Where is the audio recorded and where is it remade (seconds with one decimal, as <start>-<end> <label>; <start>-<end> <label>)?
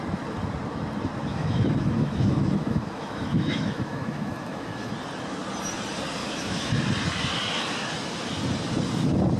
0.0-1.3 recorded; 1.3-4.9 remade; 4.9-6.2 recorded; 6.2-6.7 remade; 6.7-9.4 recorded